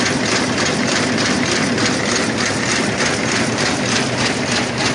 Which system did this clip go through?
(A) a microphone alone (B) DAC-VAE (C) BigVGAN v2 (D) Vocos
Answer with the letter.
A